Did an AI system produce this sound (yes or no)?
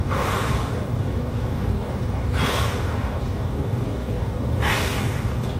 yes